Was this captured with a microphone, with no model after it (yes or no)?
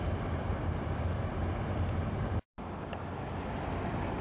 yes